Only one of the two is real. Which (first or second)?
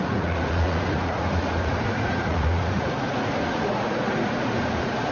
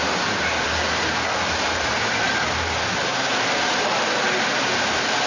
second